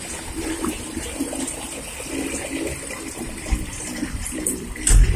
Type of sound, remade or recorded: remade